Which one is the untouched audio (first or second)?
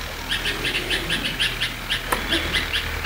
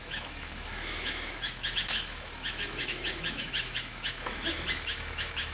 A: first